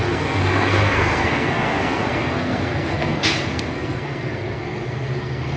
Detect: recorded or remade remade